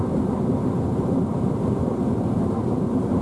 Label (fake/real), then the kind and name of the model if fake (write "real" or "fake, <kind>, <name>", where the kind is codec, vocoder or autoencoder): fake, vocoder, BigVGAN v2